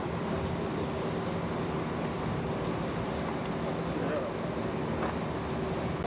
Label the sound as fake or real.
real